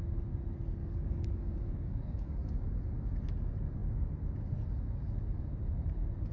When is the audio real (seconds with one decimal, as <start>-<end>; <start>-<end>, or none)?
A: 0.0-0.8; 2.4-6.3